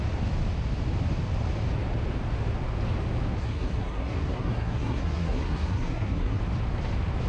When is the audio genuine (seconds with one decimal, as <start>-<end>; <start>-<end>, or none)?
0.0-3.4; 6.4-7.3

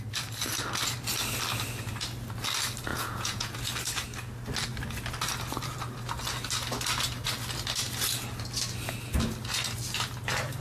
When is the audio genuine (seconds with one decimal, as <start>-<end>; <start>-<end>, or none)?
0.0-2.9; 3.6-10.6